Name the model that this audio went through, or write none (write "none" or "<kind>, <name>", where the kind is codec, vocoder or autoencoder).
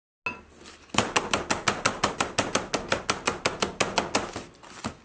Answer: none